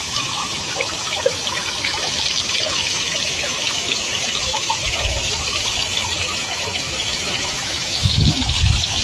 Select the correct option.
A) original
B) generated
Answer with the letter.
B